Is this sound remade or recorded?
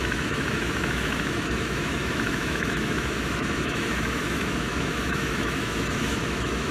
remade